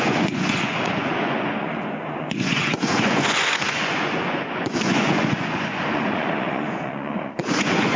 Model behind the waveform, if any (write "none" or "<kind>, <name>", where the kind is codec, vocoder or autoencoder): vocoder, Vocos